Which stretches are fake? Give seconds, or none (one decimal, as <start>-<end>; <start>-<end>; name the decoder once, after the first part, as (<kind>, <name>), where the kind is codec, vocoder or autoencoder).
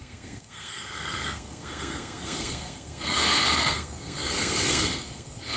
0.0-5.6 (codec, SNAC)